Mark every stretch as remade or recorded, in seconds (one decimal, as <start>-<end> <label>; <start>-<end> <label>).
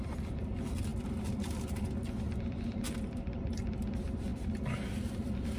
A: 0.0-5.6 recorded